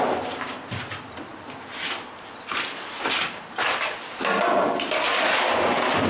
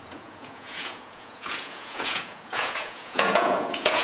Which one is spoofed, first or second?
second